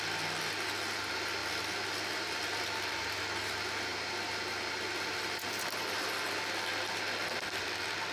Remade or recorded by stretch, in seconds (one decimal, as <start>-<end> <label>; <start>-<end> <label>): 0.0-8.1 recorded